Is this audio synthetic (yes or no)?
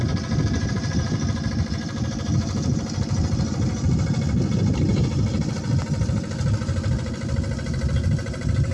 no